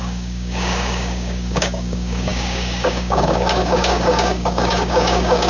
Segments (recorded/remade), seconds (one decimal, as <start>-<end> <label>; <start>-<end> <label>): 0.0-5.5 remade